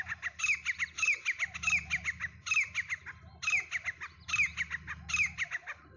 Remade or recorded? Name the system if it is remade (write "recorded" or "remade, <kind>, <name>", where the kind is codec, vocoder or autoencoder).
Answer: recorded